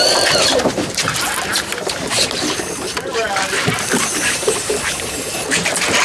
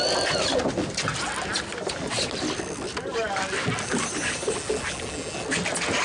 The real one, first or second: second